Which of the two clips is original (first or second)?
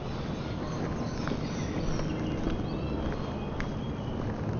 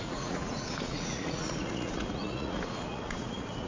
first